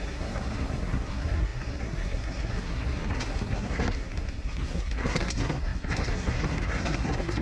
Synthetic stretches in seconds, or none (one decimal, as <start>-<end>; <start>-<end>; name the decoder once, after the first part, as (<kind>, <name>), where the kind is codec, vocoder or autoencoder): 0.0-7.4 (codec, SNAC)